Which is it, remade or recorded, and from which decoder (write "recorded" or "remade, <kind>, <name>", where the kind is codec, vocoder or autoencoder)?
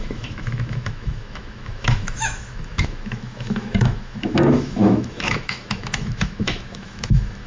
remade, autoencoder, DAC-VAE